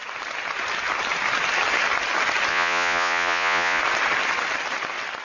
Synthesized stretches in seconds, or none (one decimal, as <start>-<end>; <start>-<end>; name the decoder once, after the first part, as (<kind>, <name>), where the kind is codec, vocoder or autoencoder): 2.5-3.8 (vocoder, Vocos)